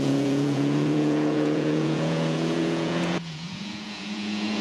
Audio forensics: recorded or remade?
remade